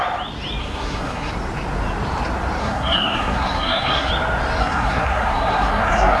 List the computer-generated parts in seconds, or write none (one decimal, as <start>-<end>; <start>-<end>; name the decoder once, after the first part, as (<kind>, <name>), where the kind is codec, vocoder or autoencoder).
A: 0.6-1.3 (codec, SNAC); 2.6-4.1; 4.6-6.2